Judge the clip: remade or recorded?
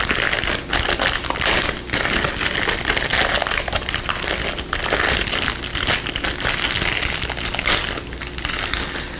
recorded